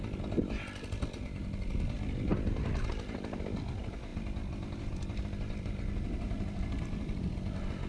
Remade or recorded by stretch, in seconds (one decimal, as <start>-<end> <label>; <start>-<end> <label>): 0.0-7.9 recorded